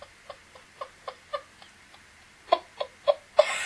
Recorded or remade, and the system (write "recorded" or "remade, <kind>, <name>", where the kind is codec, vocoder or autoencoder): recorded